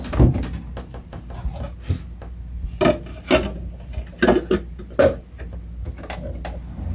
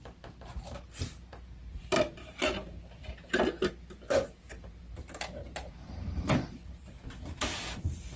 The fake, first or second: second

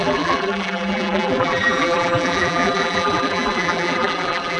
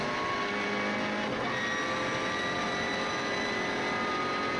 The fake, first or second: first